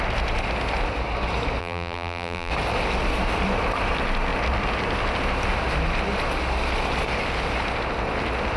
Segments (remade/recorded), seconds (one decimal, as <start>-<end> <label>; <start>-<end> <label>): 0.0-1.6 recorded; 1.6-2.5 remade; 2.5-8.6 recorded